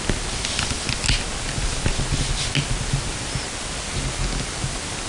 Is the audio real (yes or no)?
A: yes